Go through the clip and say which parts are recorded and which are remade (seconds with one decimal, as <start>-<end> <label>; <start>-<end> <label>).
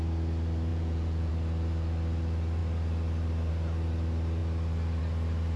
0.0-0.7 recorded; 0.7-1.3 remade; 1.3-5.6 recorded